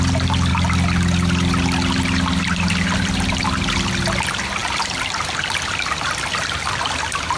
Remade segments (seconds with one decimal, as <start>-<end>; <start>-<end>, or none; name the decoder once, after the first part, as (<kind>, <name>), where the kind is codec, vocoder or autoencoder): none